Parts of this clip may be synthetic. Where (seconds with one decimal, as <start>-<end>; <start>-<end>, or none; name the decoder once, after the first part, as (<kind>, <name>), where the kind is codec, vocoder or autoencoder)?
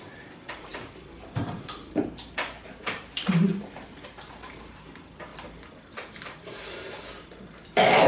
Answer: 0.0-5.3 (vocoder, BigVGAN v2)